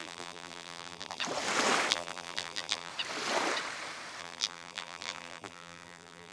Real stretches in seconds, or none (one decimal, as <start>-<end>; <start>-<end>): 1.2-1.9; 2.9-4.2